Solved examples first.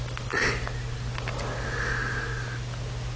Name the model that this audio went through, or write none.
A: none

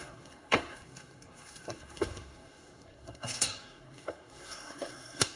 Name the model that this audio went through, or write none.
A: codec, SNAC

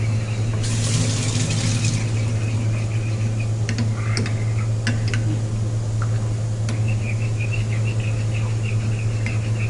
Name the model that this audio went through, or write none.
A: none